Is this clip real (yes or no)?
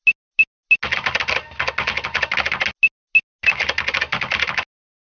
yes